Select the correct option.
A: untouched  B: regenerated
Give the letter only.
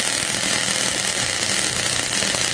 A